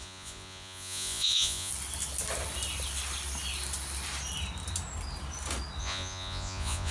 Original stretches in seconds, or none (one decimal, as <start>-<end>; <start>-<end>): 1.7-5.8

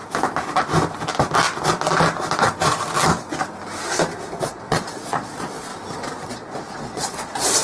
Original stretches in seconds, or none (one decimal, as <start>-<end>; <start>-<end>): 0.0-4.4; 5.7-6.3